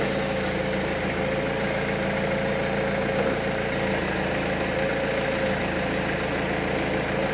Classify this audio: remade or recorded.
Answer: recorded